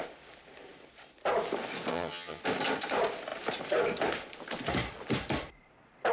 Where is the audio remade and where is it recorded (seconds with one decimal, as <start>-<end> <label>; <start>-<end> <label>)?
0.0-1.9 recorded; 1.9-2.4 remade; 2.4-6.1 recorded